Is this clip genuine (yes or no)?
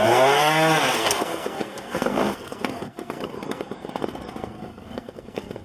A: no